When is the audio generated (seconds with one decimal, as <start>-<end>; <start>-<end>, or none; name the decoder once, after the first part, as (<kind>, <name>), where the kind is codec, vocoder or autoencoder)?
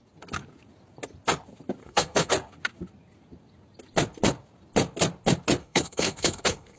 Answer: 1.8-2.3 (codec, SNAC); 5.6-6.8